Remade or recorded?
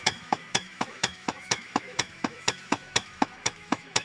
remade